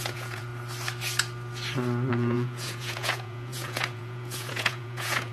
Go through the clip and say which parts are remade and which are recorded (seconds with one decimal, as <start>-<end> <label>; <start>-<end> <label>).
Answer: 0.0-0.5 remade; 0.5-2.1 recorded; 2.1-5.3 remade